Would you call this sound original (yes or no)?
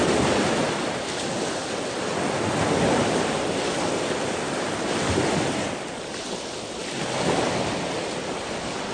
yes